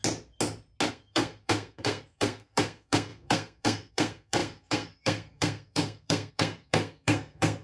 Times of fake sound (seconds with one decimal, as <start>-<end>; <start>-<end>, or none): 0.9-7.6